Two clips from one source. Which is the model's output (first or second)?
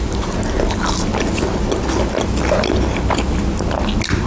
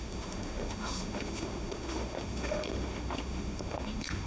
second